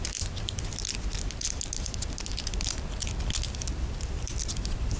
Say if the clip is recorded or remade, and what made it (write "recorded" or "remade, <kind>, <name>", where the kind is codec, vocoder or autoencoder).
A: recorded